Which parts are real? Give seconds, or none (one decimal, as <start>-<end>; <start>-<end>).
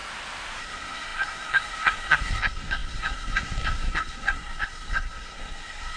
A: 0.0-0.6